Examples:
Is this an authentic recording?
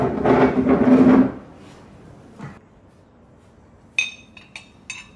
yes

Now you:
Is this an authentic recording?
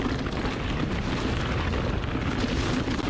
yes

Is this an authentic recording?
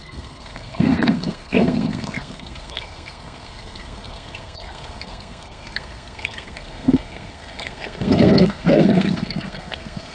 no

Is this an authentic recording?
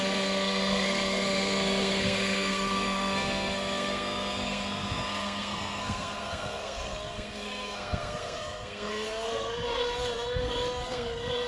no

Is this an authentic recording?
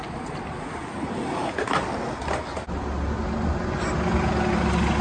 yes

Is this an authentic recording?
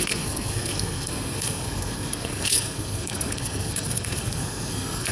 no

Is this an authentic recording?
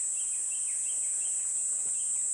yes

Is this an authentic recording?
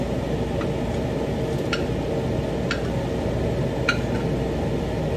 yes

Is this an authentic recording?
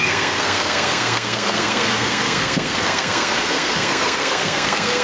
no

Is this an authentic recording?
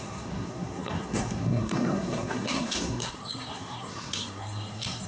no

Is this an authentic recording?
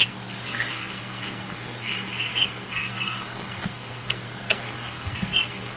no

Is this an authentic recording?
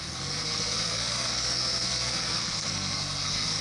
no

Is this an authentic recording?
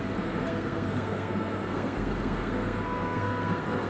no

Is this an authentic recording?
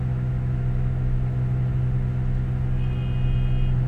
yes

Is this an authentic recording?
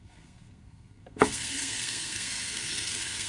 no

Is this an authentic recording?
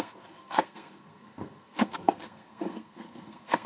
no